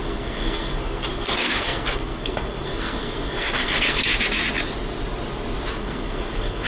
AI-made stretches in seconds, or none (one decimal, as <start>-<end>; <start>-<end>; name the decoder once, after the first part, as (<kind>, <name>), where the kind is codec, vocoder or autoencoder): 0.0-4.1 (codec, SNAC); 5.7-6.7